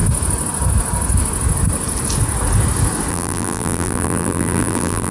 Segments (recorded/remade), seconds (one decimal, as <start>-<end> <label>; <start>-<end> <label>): 0.0-3.1 recorded; 3.1-5.1 remade